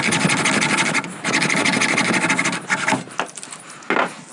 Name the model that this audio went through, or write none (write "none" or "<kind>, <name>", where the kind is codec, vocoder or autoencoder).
none